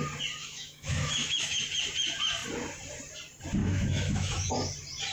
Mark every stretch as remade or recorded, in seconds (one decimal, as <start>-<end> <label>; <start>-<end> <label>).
0.0-0.4 recorded; 0.4-1.6 remade; 1.6-3.6 recorded; 3.6-4.5 remade; 4.5-5.1 recorded